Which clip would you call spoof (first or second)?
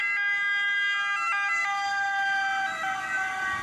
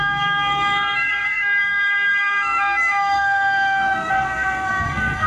second